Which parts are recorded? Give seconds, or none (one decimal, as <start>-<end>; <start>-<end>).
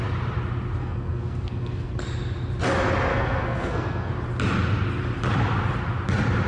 0.0-0.8; 1.9-3.1; 4.1-6.5